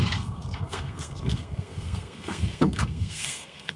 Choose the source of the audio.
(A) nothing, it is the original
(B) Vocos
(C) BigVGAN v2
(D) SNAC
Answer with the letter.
D